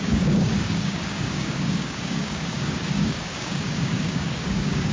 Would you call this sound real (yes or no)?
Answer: no